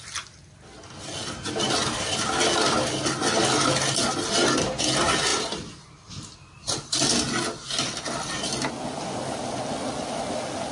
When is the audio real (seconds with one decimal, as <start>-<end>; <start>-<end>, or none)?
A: 0.0-10.7